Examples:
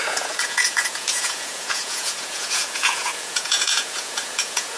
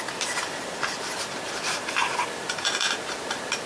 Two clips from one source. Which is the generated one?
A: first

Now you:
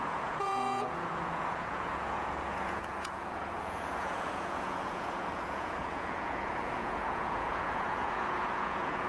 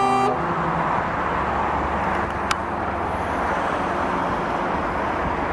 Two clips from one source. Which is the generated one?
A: first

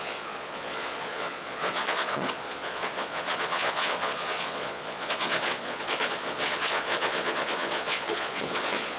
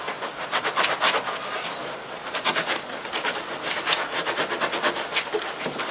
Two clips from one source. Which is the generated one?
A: first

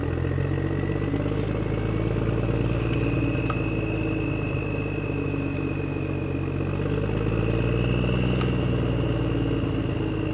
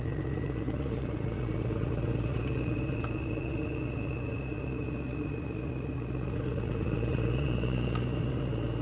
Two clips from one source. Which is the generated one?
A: second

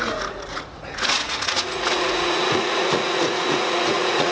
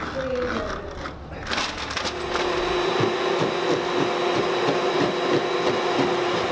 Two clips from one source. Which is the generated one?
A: first